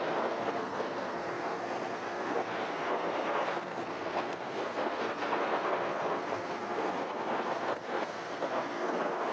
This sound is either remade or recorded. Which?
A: remade